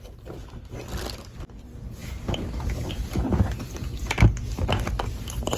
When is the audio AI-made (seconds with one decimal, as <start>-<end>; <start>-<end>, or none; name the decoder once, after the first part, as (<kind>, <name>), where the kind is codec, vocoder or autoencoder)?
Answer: none